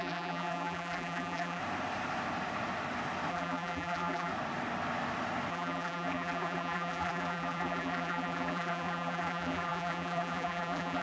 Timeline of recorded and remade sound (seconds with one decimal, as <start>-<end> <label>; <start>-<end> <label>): 0.0-1.6 remade; 1.6-3.3 recorded; 3.3-4.3 remade; 4.3-5.5 recorded; 5.5-11.0 remade